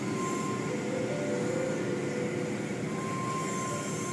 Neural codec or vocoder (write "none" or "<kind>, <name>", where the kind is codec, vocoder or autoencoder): none